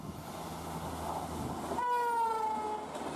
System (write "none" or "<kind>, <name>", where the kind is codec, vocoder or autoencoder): none